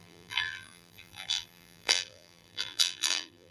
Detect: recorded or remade remade